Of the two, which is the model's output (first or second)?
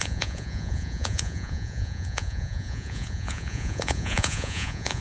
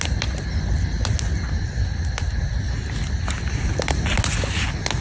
first